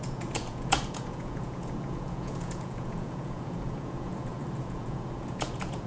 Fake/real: fake